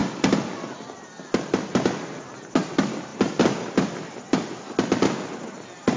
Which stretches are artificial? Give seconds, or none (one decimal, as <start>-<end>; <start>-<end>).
none